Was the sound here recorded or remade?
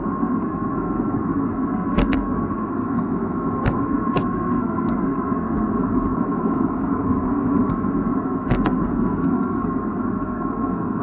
remade